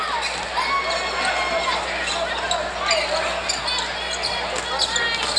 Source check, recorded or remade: recorded